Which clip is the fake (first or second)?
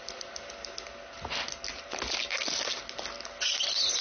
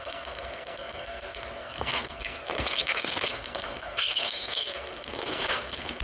second